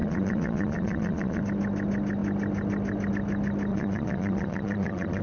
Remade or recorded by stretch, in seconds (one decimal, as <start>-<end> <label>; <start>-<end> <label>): 0.0-1.4 remade; 1.4-3.7 recorded; 3.7-5.2 remade